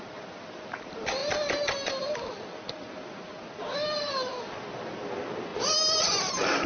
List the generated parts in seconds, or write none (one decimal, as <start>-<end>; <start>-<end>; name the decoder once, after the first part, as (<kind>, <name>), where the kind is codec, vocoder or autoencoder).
none